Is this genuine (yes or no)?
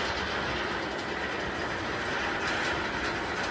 yes